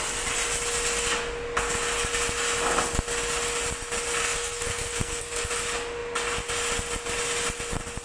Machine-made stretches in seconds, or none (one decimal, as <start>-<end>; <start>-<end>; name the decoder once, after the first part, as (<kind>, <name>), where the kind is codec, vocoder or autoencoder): 4.2-5.5 (codec, SNAC)